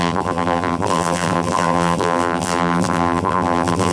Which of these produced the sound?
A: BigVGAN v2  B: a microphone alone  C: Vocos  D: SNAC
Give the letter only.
A